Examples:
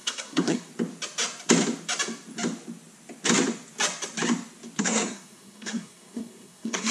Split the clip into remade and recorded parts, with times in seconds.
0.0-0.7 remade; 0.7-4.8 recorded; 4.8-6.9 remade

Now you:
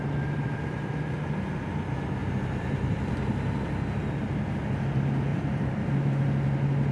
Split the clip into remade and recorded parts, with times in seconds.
0.0-2.2 recorded; 2.2-3.2 remade; 3.2-5.3 recorded; 5.3-6.1 remade; 6.1-6.9 recorded

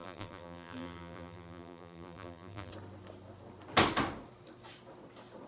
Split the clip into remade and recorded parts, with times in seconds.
0.0-2.7 remade; 2.7-5.5 recorded